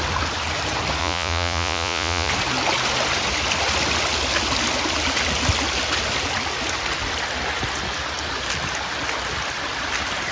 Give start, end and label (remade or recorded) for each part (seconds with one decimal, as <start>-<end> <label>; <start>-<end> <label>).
0.0-1.0 recorded; 1.0-2.3 remade; 2.3-10.3 recorded